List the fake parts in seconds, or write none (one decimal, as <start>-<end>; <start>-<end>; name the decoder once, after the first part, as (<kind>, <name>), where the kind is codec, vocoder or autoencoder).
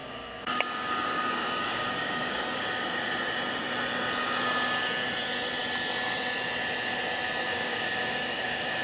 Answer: 0.0-2.6 (codec, DAC); 7.5-8.8